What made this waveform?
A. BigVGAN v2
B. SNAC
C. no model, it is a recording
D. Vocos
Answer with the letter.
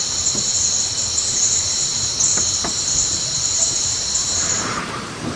A